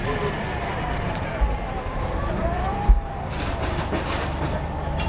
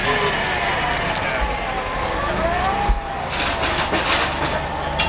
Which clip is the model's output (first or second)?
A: first